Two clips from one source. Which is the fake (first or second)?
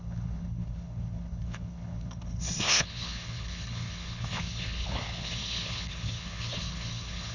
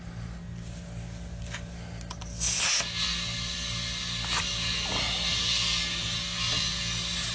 first